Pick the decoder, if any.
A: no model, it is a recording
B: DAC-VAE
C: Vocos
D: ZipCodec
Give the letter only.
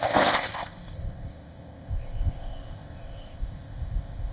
D